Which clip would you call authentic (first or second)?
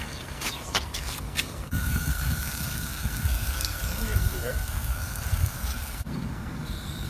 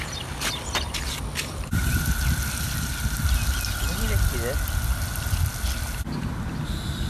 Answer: second